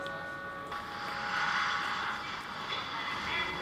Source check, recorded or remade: recorded